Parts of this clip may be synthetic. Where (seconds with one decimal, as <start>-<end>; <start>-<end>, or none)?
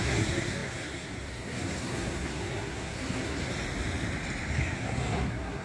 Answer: 0.0-3.5; 4.6-5.6